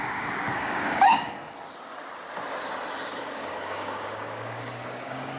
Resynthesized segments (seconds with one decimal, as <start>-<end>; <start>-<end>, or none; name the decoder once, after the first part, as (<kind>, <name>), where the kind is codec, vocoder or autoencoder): 0.0-1.4 (codec, DAC); 3.3-5.4